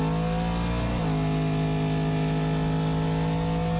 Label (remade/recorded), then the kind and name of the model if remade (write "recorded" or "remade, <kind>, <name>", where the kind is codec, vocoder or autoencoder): recorded